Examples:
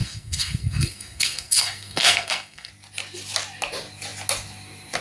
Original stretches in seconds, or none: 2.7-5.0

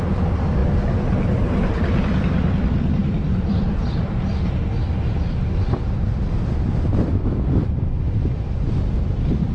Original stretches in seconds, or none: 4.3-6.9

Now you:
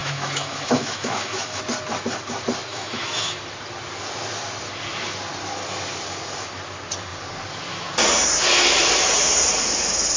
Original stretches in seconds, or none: 1.6-2.7; 3.4-10.2

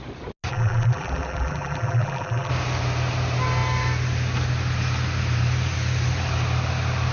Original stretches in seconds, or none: 0.0-0.5; 2.5-7.1